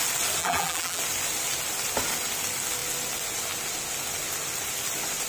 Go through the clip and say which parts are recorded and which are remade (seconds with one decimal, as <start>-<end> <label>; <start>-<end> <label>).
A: 0.0-0.4 recorded; 0.4-1.0 remade; 1.0-5.3 recorded

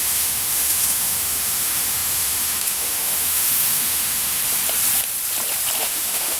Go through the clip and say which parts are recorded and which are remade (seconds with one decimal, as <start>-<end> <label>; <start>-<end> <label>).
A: 0.0-4.4 remade; 4.4-5.8 recorded; 5.8-6.4 remade

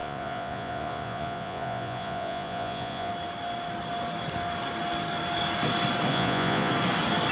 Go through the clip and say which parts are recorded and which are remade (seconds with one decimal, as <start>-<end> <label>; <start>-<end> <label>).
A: 0.0-3.1 remade; 3.1-6.1 recorded; 6.1-6.7 remade; 6.7-7.3 recorded

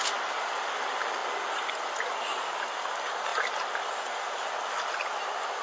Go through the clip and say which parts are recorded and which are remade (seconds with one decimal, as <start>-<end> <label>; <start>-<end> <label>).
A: 0.0-5.6 recorded

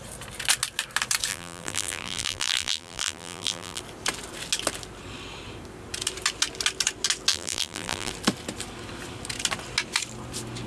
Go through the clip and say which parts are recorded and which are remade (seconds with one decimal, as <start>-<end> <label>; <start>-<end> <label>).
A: 0.0-1.3 recorded; 1.3-3.8 remade; 3.8-7.3 recorded; 7.3-8.1 remade; 8.1-10.7 recorded

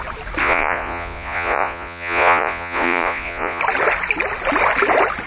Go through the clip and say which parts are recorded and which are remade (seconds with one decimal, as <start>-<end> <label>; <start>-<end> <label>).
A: 0.0-0.4 recorded; 0.4-3.6 remade; 3.6-5.3 recorded

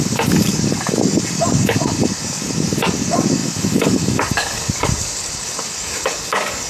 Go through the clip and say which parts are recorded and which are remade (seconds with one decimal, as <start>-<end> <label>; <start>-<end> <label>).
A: 0.0-6.7 remade

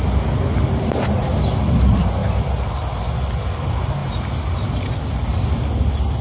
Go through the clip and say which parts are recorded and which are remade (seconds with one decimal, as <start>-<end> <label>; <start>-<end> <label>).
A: 0.0-6.2 recorded